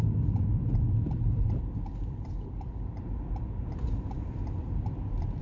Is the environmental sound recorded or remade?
remade